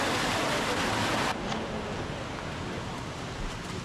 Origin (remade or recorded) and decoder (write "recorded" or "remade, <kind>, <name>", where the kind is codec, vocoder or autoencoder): recorded